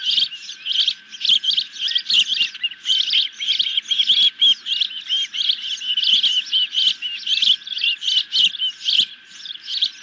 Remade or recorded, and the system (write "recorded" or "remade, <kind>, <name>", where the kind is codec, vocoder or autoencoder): recorded